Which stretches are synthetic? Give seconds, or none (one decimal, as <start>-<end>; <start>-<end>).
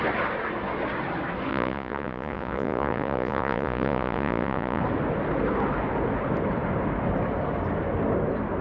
1.5-4.8